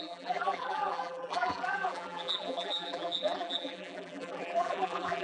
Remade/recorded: remade